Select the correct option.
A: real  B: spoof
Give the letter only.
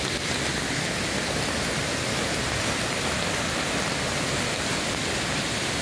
A